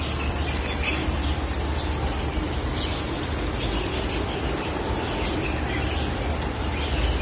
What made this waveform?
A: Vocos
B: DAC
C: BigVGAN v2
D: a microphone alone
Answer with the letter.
D